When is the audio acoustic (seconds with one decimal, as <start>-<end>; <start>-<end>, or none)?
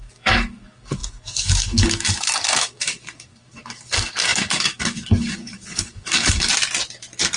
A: 6.5-7.4